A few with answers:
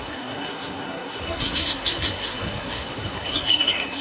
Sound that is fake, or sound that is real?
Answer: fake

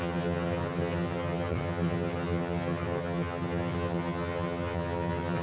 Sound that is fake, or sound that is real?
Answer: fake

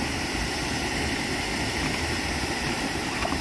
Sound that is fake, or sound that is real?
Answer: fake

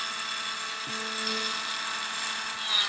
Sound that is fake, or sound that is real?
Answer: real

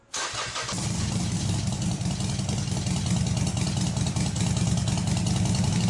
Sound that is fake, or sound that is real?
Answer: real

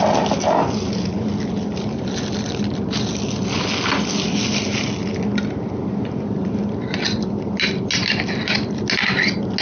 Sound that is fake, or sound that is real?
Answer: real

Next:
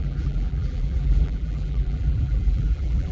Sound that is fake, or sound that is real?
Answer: fake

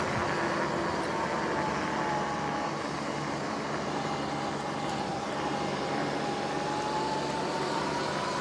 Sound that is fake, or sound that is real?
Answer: real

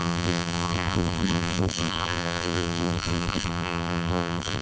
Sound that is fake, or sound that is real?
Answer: fake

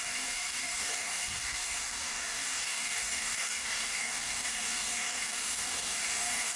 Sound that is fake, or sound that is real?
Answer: fake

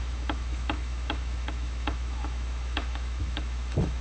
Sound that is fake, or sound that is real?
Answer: fake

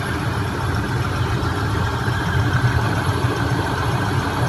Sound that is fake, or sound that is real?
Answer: fake